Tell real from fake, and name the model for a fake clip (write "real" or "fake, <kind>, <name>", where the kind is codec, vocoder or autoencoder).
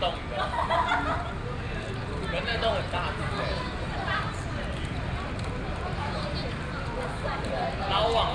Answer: real